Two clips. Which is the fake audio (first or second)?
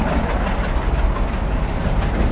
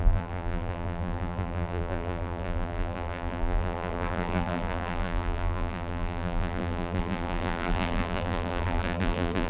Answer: second